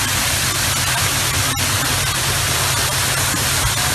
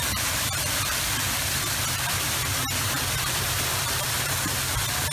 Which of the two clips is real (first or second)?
first